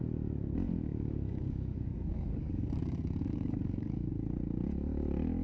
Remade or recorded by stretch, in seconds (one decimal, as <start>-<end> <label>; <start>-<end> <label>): 0.0-0.9 recorded; 0.9-4.1 remade; 4.1-5.4 recorded